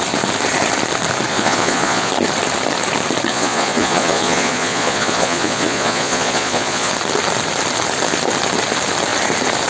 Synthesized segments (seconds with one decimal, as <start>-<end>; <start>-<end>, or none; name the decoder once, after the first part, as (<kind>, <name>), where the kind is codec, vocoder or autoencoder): 1.3-2.1 (vocoder, Vocos); 3.3-6.9